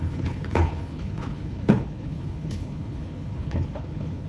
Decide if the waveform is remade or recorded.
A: remade